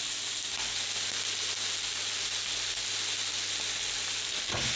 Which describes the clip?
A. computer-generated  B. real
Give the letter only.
B